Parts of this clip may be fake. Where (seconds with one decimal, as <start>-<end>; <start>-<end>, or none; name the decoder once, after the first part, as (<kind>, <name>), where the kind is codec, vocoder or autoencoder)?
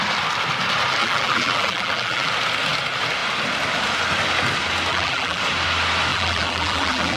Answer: 1.0-2.3 (vocoder, BigVGAN v2); 4.9-5.4; 6.1-7.2